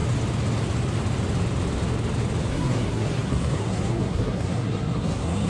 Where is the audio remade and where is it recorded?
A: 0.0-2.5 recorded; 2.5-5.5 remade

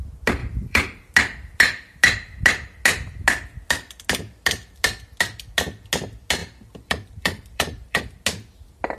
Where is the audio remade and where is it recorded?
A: 0.0-0.4 recorded; 0.4-1.1 remade; 1.1-6.4 recorded; 6.4-8.0 remade; 8.0-9.0 recorded

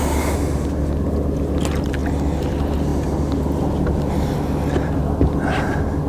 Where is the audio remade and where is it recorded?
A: 0.0-6.1 recorded

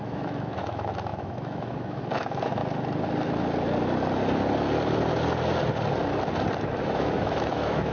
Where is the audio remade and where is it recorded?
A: 0.0-2.6 remade; 2.6-6.6 recorded; 6.6-7.9 remade